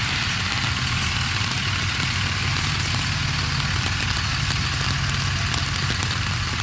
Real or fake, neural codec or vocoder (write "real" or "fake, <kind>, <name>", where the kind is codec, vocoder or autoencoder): real